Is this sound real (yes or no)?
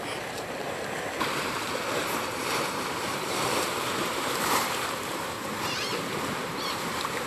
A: no